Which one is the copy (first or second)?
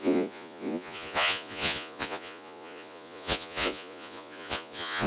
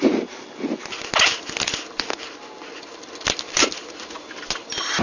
first